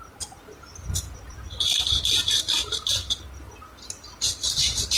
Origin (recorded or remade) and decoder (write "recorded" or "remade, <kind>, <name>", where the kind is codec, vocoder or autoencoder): recorded